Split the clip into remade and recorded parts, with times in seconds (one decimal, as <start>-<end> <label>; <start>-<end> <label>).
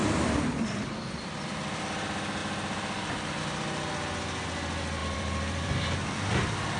0.0-1.8 remade; 1.8-2.4 recorded; 2.4-3.4 remade; 3.4-5.0 recorded; 5.0-6.8 remade